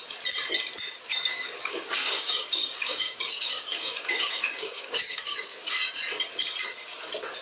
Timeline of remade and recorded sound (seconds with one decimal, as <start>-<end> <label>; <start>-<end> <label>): 0.0-1.3 recorded; 1.3-5.7 remade; 5.7-7.4 recorded